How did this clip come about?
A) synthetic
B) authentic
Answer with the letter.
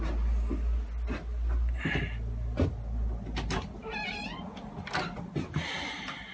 B